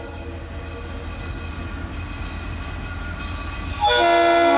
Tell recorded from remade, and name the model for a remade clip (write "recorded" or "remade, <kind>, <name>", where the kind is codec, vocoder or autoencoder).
recorded